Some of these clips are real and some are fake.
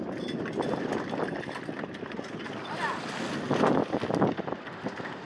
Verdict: real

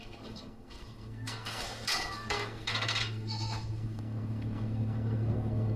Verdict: fake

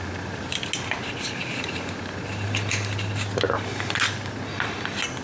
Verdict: real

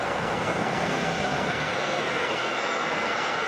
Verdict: fake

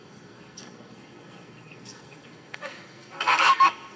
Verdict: fake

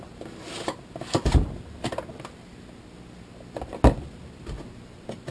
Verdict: real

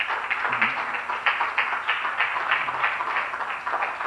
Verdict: real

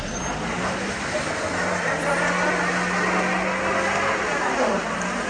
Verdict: real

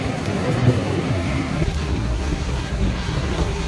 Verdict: fake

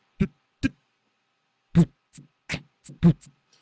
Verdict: real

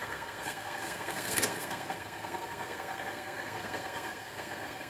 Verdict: fake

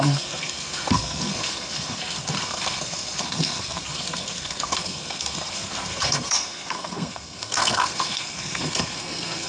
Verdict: fake